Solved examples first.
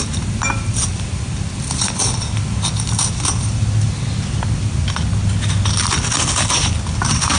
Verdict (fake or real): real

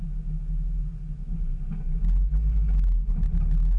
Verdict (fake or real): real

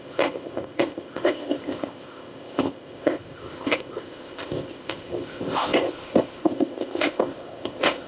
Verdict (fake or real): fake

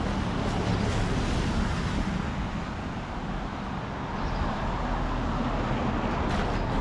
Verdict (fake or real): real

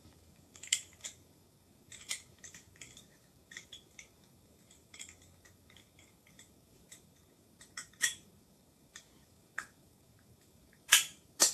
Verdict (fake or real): fake